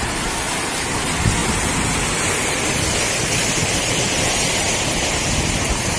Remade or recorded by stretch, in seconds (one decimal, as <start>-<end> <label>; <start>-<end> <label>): 0.0-6.0 recorded